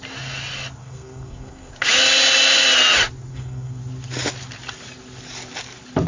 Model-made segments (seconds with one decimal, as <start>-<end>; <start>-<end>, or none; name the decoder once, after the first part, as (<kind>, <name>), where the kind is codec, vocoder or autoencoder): 0.8-1.7 (codec, SNAC); 3.3-3.8